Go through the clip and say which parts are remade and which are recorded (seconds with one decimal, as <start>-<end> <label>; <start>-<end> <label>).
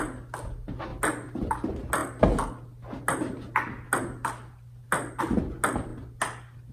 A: 0.0-6.7 recorded